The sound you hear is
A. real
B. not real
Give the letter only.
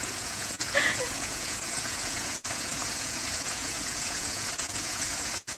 B